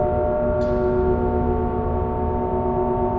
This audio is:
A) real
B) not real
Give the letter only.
A